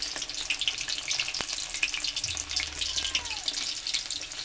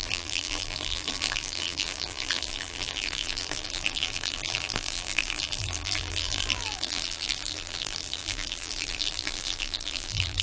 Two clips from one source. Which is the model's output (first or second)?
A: second